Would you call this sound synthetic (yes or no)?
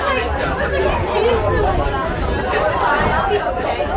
no